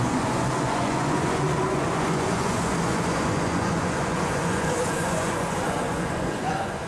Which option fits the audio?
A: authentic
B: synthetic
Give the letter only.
B